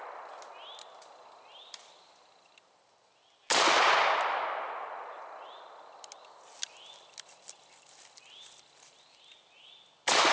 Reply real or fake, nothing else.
real